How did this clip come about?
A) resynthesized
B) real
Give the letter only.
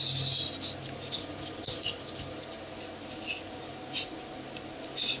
B